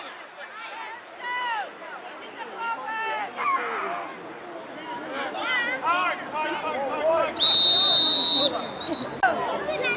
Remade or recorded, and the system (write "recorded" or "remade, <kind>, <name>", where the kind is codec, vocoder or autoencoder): recorded